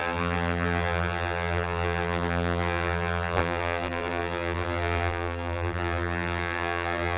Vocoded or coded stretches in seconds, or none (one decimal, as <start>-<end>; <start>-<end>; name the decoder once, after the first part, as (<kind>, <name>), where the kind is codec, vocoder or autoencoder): 0.0-7.2 (vocoder, BigVGAN v2)